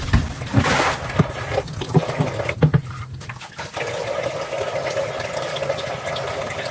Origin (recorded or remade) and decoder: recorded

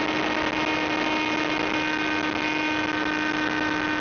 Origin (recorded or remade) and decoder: recorded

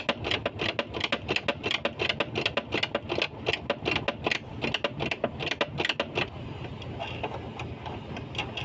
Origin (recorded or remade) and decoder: recorded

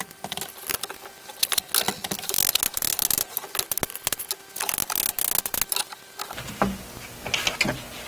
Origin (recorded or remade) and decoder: recorded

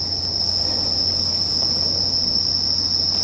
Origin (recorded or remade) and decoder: recorded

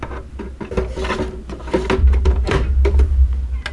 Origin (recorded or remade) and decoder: recorded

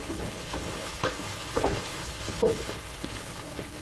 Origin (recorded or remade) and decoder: remade, codec, HILCodec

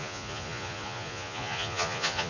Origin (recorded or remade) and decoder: remade, vocoder, Vocos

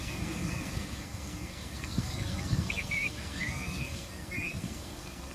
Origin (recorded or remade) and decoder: remade, codec, SNAC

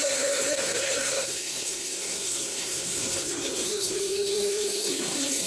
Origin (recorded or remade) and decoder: remade, codec, SNAC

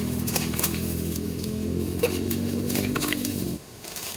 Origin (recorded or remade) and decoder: remade, autoencoder, DAC-VAE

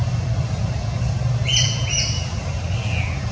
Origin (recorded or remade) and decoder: recorded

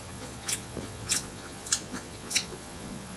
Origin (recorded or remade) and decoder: remade, vocoder, Vocos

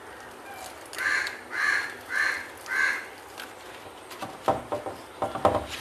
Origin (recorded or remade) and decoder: recorded